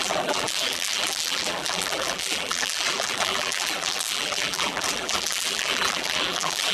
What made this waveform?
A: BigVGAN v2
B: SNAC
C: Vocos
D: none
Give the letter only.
A